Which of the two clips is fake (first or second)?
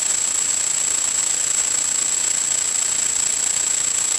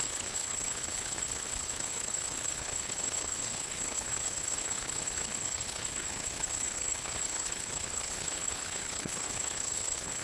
second